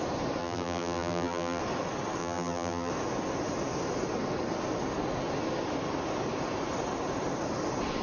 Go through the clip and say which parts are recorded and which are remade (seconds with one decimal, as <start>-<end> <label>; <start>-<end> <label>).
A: 0.0-0.4 recorded; 0.4-1.6 remade; 1.6-2.2 recorded; 2.2-2.9 remade; 2.9-8.0 recorded